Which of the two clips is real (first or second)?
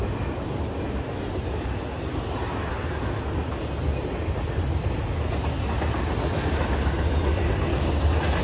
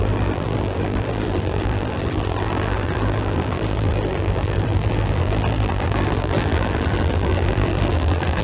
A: first